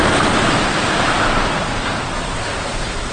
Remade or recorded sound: recorded